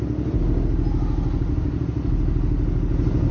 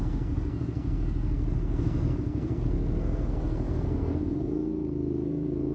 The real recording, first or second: first